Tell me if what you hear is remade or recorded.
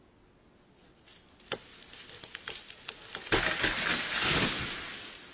recorded